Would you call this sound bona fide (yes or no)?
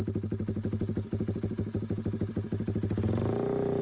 yes